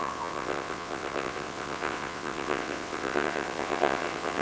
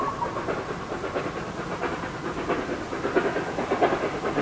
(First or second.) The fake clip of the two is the first